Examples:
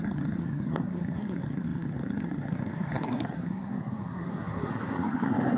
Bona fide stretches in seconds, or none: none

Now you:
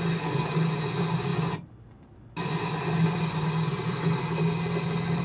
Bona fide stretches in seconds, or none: 0.0-5.2